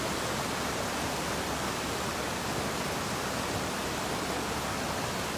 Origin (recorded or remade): recorded